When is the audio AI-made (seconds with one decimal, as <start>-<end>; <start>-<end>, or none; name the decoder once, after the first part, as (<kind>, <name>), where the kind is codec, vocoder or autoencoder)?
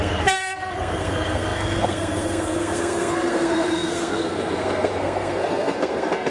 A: 0.0-6.3 (codec, SNAC)